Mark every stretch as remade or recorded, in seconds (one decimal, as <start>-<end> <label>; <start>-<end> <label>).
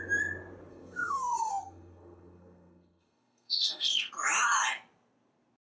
0.0-0.7 recorded; 0.7-4.1 remade; 4.1-5.7 recorded